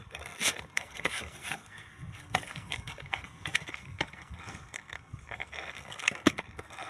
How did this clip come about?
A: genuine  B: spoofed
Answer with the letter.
B